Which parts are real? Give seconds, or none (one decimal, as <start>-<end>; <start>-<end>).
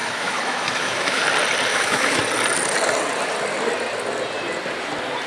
1.2-1.7; 2.2-5.3